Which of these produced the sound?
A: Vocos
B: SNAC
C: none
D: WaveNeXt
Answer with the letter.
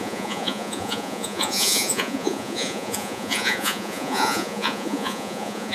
A